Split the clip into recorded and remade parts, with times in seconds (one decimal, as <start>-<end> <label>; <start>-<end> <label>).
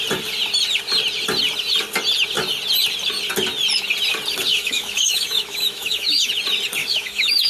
0.0-4.5 recorded; 4.5-6.3 remade; 6.3-6.8 recorded; 6.8-7.5 remade